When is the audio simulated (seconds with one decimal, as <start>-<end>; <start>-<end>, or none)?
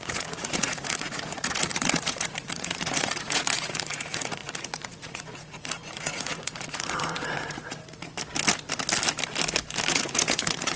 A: 0.0-8.2; 9.9-10.8